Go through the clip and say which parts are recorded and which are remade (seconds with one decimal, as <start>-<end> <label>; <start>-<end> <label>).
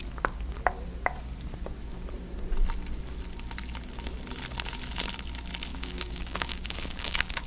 0.0-5.7 recorded; 5.7-7.5 remade